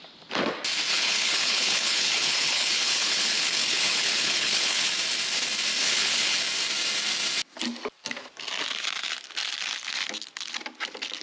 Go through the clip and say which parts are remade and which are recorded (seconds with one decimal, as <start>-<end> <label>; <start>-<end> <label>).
0.0-0.9 recorded; 0.9-4.9 remade; 4.9-5.8 recorded; 5.8-6.4 remade; 6.4-11.2 recorded